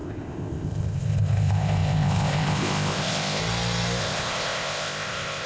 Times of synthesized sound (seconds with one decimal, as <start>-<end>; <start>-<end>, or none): 0.0-3.4; 4.0-5.5